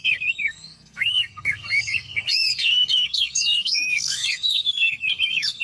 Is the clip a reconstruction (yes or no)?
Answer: yes